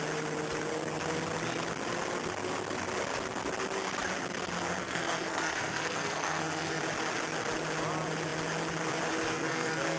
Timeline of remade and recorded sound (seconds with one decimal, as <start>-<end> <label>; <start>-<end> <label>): 0.0-4.8 recorded; 4.8-6.8 remade; 6.8-9.3 recorded; 9.3-10.0 remade